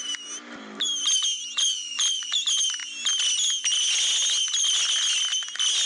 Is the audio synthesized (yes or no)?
no